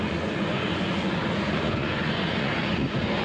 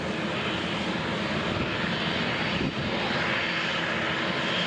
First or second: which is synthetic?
first